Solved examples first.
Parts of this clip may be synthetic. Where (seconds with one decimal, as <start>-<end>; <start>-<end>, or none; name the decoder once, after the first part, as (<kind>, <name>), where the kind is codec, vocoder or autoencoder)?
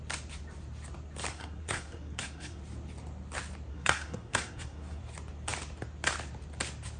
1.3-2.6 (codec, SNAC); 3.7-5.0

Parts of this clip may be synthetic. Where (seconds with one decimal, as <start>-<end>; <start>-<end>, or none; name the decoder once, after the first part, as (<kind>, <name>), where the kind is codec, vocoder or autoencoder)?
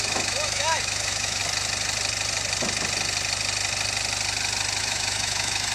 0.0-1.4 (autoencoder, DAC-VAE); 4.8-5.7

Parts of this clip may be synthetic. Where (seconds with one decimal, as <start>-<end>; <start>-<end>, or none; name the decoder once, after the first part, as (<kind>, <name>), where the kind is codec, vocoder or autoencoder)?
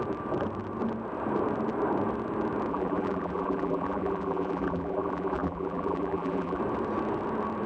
2.7-6.6 (vocoder, BigVGAN v2)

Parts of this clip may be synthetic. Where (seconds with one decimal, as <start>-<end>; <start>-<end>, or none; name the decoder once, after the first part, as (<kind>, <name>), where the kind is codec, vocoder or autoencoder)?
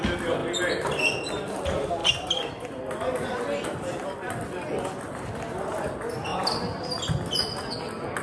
none